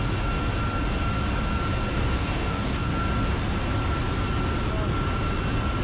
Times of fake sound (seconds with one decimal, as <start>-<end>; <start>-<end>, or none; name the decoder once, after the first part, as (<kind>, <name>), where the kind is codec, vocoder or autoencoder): 1.9-2.9 (codec, DAC)